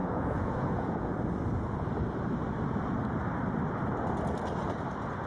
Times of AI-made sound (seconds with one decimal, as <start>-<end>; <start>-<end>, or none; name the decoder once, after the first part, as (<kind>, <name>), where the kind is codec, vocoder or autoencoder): 0.0-1.1 (vocoder, Vocos)